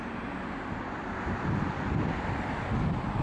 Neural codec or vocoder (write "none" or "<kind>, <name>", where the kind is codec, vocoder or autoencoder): none